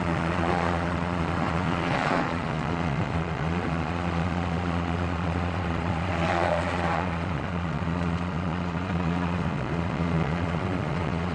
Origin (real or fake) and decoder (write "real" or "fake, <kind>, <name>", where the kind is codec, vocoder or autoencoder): fake, vocoder, Vocos